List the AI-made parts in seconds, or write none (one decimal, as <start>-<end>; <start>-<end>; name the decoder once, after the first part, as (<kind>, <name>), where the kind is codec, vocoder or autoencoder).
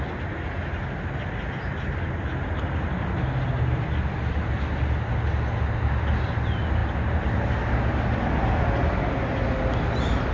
none